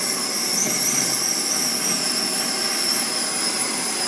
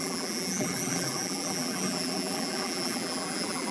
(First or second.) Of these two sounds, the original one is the first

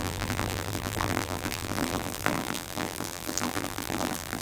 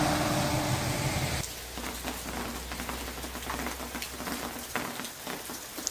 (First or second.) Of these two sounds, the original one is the second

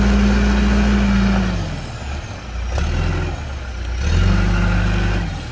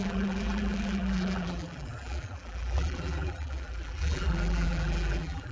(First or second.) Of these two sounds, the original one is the first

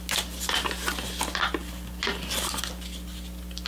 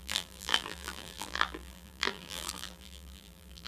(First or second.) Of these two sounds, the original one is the first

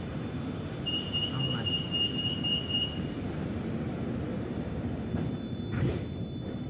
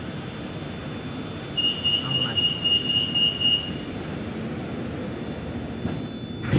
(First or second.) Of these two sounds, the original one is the second